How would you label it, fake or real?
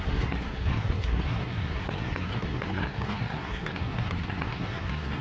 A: fake